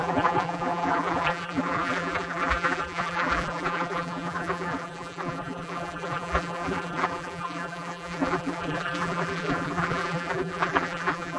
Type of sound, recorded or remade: remade